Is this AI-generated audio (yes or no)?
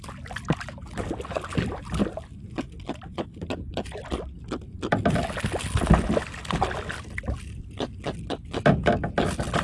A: no